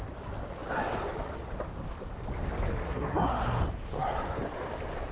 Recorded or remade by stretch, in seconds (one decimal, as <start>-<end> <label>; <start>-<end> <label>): 0.0-2.8 recorded; 2.8-3.6 remade; 3.6-5.1 recorded